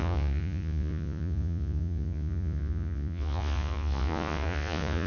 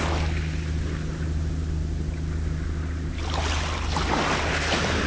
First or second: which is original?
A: second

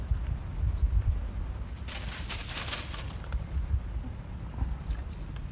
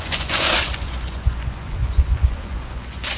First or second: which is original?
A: first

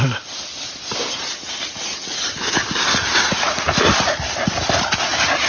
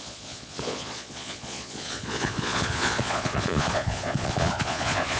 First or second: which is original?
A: first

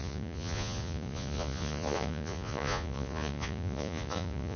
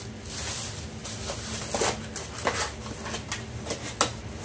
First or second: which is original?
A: second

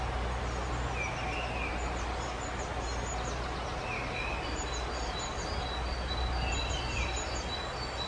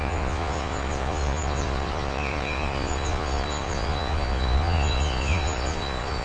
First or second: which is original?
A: first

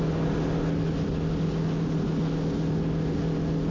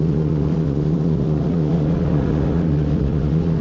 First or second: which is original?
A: first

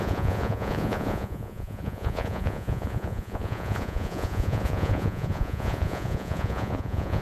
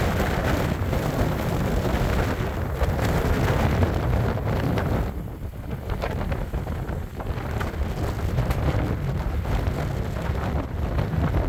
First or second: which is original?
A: second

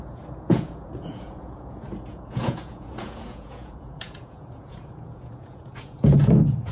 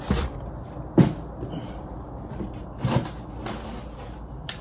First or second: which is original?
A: second